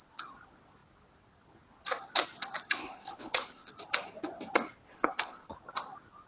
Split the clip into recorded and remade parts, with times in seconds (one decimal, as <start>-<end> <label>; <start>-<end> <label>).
0.0-2.8 recorded; 2.8-3.7 remade; 3.7-4.9 recorded; 4.9-5.5 remade; 5.5-6.3 recorded